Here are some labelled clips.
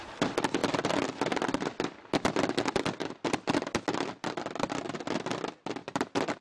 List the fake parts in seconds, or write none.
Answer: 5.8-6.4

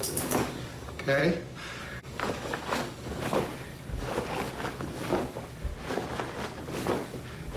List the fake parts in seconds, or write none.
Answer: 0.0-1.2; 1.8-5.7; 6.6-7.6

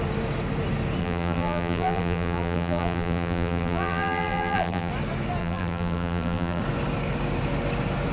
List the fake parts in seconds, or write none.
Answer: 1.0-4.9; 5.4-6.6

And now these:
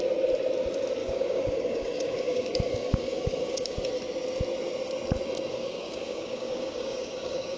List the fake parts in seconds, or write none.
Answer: 1.0-3.9; 5.5-7.6

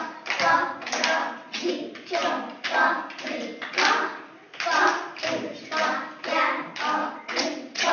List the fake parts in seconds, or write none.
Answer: 1.2-1.7; 7.0-7.9

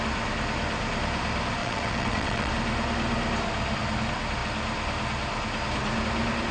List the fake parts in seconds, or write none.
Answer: 1.6-2.5

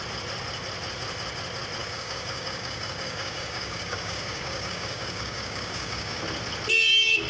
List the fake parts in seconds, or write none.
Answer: 1.8-6.2